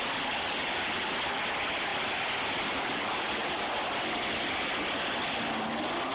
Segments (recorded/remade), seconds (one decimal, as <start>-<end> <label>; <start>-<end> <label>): 0.0-6.1 recorded